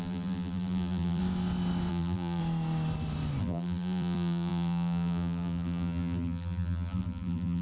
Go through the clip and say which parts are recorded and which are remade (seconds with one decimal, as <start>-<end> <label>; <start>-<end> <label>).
0.0-1.2 remade; 1.2-1.9 recorded; 1.9-2.4 remade; 2.4-3.4 recorded; 3.4-7.6 remade